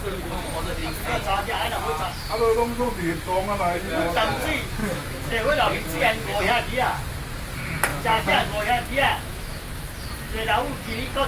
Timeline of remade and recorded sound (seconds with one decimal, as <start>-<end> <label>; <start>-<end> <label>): 0.0-4.8 recorded; 4.8-6.4 remade; 6.4-7.9 recorded; 7.9-9.6 remade; 9.6-11.3 recorded